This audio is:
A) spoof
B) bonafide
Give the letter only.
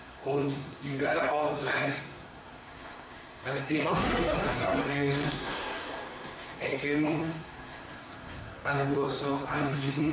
A